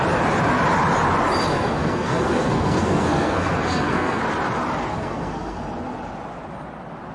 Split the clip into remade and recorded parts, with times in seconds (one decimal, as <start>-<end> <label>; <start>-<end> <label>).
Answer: 0.0-1.5 recorded; 1.5-4.2 remade; 4.2-4.9 recorded; 4.9-5.6 remade; 5.6-7.1 recorded